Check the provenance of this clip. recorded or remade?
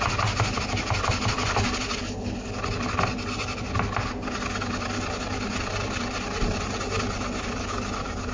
recorded